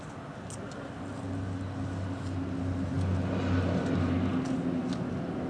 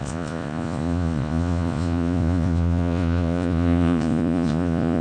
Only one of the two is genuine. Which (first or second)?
first